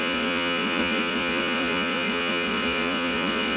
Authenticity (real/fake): fake